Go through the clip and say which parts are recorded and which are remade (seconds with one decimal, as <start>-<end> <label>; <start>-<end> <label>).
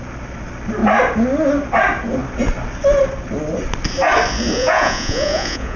0.0-4.6 recorded; 4.6-5.8 remade